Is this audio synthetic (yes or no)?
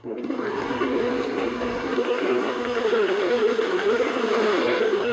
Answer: yes